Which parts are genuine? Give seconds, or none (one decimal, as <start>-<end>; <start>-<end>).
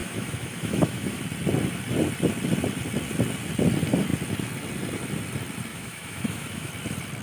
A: 1.2-5.7; 6.7-7.2